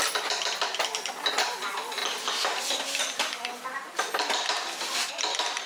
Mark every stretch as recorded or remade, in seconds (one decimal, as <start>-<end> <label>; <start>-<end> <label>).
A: 0.0-5.7 recorded